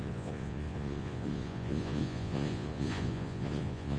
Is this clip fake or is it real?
fake